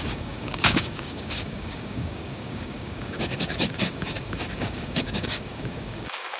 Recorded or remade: remade